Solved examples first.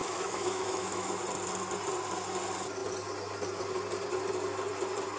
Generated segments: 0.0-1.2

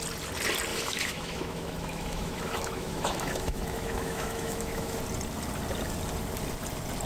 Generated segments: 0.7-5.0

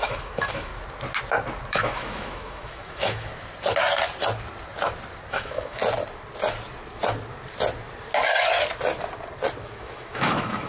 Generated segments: 0.0-0.7; 1.7-3.3; 5.3-5.8; 9.6-10.7

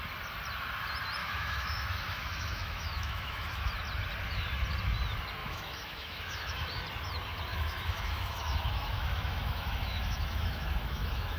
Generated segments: 1.2-3.7; 5.4-6.7; 7.5-11.4

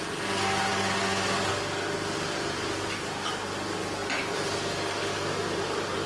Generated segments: none

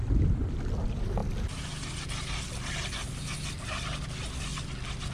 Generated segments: none